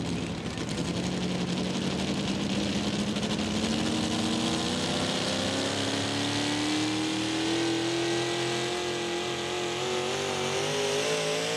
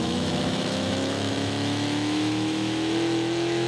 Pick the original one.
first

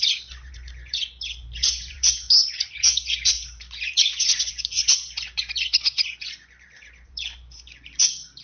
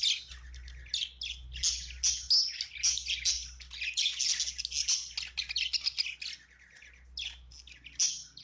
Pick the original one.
second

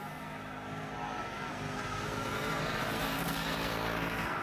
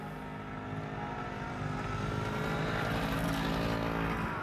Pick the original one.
second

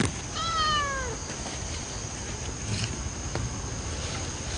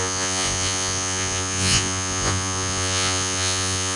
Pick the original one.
first